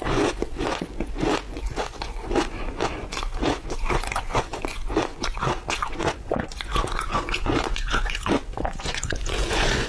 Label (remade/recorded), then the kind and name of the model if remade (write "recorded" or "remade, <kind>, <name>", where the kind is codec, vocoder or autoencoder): remade, vocoder, Vocos